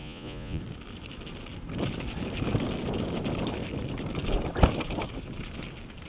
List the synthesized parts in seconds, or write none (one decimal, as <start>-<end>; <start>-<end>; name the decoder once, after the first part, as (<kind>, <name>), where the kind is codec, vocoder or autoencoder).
0.0-0.6 (vocoder, Vocos)